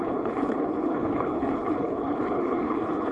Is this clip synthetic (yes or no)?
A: yes